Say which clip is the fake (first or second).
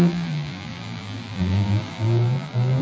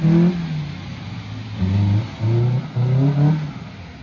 first